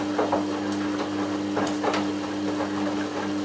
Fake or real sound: real